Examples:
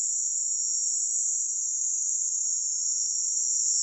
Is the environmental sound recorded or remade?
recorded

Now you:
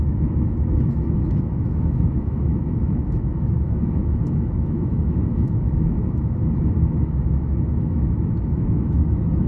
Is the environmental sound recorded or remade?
remade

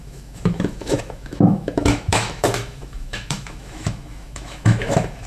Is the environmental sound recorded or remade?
remade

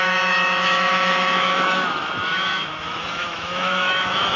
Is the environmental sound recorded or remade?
remade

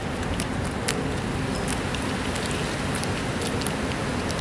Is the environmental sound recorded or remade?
recorded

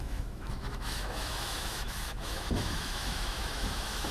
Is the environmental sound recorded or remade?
remade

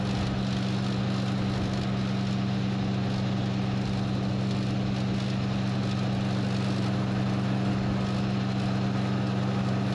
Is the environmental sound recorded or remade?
recorded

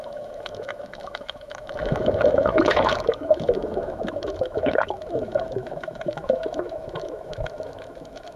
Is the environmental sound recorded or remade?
remade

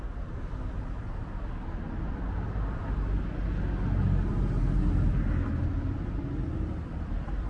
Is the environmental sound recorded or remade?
recorded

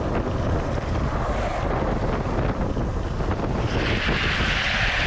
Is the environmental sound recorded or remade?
recorded